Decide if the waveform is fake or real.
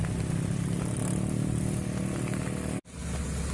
real